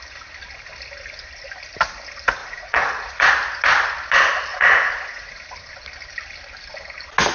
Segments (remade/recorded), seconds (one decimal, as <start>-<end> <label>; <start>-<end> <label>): 0.0-2.4 recorded; 2.4-3.3 remade; 3.3-4.5 recorded; 4.5-5.3 remade; 5.3-7.3 recorded